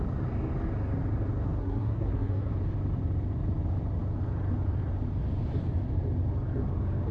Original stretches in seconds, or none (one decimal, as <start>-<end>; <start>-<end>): 0.0-1.6; 2.5-7.1